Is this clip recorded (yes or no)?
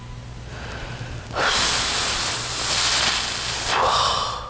yes